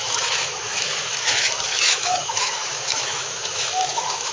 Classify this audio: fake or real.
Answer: fake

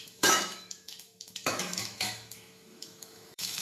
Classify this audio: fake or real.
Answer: fake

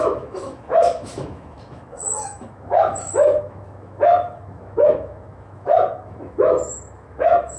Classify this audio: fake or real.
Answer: fake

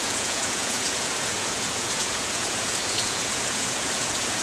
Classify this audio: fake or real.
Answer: fake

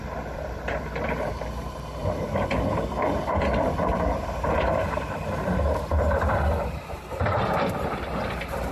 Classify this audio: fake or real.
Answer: fake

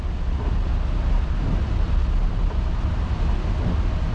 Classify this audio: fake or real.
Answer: real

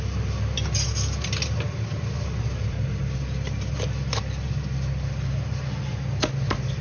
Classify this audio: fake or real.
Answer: real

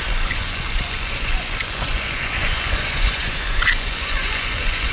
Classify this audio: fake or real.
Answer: fake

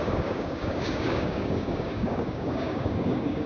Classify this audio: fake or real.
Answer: fake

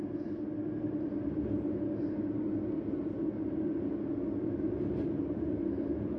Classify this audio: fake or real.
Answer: real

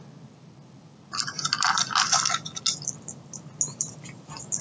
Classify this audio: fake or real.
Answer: real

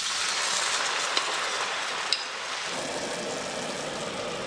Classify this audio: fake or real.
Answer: real